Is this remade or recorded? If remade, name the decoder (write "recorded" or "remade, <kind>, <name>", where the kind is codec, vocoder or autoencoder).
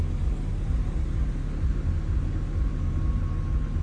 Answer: recorded